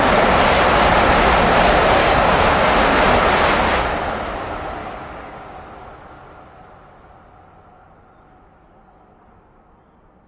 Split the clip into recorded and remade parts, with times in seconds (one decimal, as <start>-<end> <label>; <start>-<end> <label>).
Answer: 0.0-2.0 recorded; 2.0-2.9 remade; 2.9-4.8 recorded; 4.8-5.6 remade; 5.6-10.3 recorded

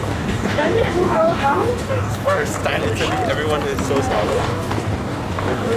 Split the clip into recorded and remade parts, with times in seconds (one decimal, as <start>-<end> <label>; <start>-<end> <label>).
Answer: 0.0-2.6 remade; 2.6-4.1 recorded; 4.1-5.8 remade

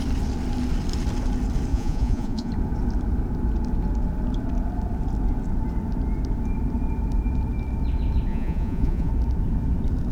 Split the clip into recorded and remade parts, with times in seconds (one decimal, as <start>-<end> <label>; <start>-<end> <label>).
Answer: 0.0-1.7 recorded; 1.7-2.5 remade; 2.5-8.3 recorded; 8.3-9.1 remade; 9.1-10.1 recorded

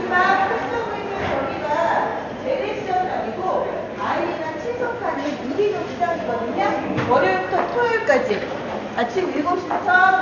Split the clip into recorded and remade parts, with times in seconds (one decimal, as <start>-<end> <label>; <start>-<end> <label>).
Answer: 0.0-2.1 recorded; 2.1-5.5 remade; 5.5-7.7 recorded; 7.7-9.6 remade; 9.6-10.2 recorded

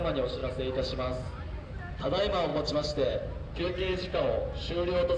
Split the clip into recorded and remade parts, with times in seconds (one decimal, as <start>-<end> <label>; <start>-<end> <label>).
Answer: 0.0-2.5 recorded; 2.5-4.2 remade; 4.2-5.2 recorded